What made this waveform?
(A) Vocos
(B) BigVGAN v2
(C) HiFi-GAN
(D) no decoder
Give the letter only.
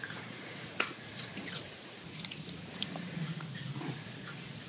A